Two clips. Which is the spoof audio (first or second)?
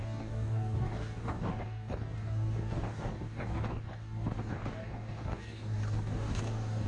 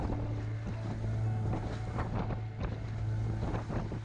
first